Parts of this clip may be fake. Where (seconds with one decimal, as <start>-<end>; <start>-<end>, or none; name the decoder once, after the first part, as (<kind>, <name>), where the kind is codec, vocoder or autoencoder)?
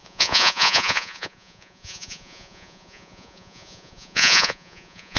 0.0-5.2 (vocoder, Vocos)